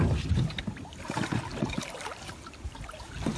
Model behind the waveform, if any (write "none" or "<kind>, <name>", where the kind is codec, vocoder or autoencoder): none